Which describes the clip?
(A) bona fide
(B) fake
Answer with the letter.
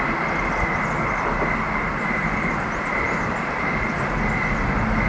A